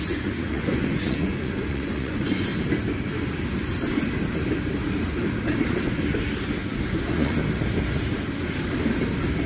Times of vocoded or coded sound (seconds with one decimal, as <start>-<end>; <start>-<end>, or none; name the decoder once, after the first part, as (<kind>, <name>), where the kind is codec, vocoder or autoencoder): 0.0-2.5 (vocoder, Vocos); 6.8-7.4